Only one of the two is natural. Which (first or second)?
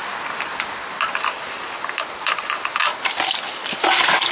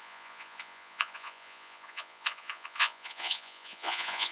first